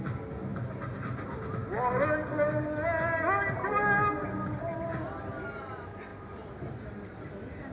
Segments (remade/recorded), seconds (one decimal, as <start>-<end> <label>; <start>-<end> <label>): 0.0-7.7 recorded